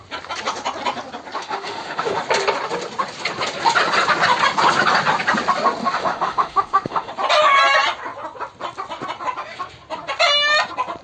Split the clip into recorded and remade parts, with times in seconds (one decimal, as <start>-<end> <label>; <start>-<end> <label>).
0.0-1.4 recorded; 1.4-2.2 remade; 2.2-5.8 recorded; 5.8-7.1 remade; 7.1-11.0 recorded